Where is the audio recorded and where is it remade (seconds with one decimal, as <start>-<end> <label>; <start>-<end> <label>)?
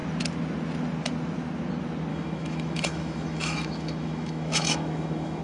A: 0.0-2.1 recorded; 2.1-5.4 remade